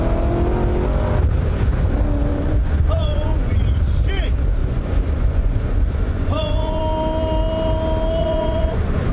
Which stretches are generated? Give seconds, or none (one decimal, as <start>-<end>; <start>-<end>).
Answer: 2.3-3.6; 4.6-6.8; 8.2-9.1